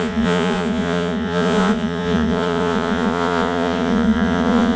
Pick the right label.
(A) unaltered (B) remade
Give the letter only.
B